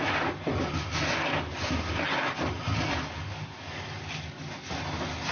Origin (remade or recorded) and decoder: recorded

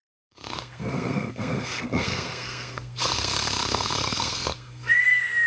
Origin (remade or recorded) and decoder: remade, codec, SNAC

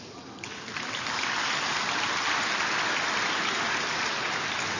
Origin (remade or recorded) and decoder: recorded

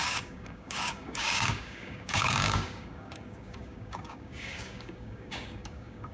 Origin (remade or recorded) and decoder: remade, codec, DAC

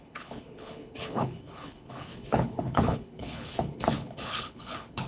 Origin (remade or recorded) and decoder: remade, codec, HILCodec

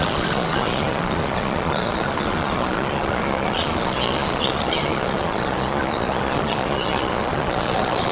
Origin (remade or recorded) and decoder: remade, vocoder, Vocos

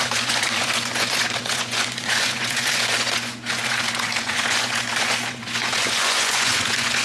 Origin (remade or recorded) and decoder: remade, vocoder, Vocos